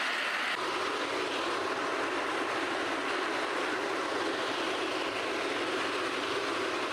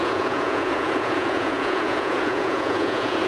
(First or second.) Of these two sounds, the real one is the first